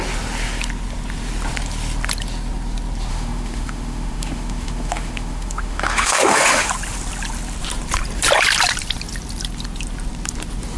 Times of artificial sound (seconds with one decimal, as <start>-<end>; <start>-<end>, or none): 3.1-6.7